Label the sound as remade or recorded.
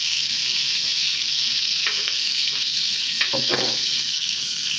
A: remade